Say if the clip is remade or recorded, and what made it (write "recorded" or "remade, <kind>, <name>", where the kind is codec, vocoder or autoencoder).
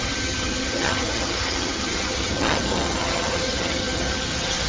remade, vocoder, HiFi-GAN